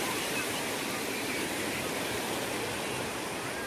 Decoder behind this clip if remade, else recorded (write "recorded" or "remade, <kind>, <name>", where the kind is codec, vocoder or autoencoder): recorded